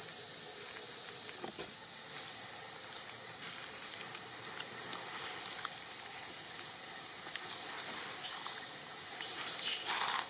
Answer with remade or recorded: recorded